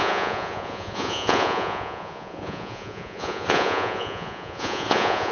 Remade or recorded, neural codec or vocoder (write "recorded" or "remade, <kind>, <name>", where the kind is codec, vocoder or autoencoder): remade, vocoder, Vocos